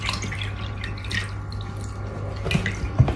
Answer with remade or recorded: recorded